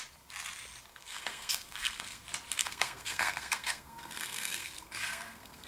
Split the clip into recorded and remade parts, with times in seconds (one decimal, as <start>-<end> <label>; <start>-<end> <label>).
0.0-0.9 recorded; 0.9-2.2 remade; 2.2-2.6 recorded; 2.6-5.7 remade